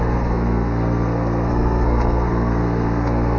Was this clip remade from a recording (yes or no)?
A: yes